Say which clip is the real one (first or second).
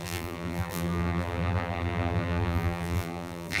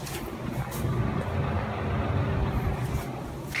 second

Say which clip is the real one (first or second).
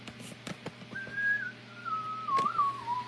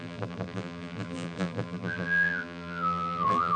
first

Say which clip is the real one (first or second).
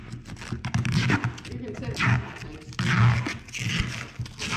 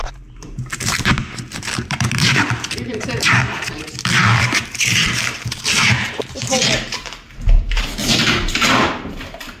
first